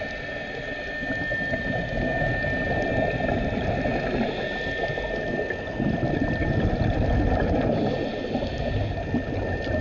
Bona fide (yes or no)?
yes